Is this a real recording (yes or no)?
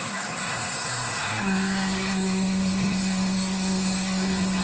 no